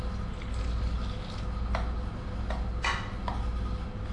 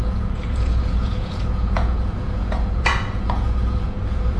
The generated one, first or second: second